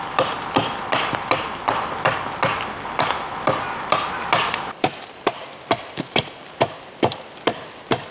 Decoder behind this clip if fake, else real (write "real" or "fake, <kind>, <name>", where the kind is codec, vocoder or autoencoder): fake, vocoder, BigVGAN v2